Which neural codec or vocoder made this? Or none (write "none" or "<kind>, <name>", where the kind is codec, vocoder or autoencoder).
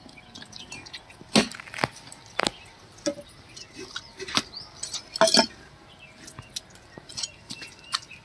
none